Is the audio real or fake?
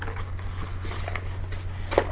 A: real